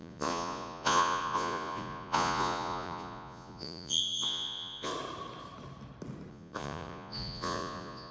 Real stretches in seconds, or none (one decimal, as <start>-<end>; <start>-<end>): 4.9-6.3